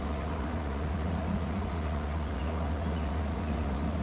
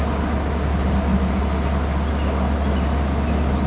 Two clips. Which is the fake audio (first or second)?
first